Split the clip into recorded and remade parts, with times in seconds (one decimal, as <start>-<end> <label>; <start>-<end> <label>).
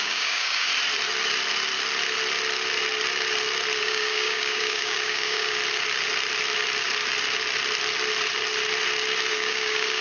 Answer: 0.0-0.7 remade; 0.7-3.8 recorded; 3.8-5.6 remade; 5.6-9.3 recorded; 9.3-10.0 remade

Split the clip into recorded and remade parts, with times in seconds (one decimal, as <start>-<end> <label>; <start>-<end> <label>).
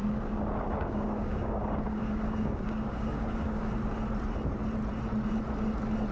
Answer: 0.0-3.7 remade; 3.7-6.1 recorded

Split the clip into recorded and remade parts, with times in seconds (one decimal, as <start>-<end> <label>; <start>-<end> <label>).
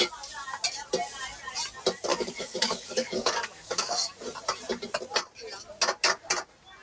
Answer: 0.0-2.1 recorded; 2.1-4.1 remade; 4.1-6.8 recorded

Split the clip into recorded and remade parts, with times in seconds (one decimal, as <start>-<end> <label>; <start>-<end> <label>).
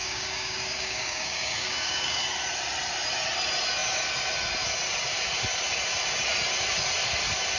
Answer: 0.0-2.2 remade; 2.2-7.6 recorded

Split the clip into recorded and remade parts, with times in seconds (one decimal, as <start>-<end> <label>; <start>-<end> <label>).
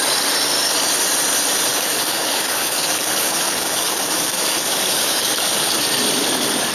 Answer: 0.0-1.7 recorded; 1.7-5.7 remade; 5.7-6.7 recorded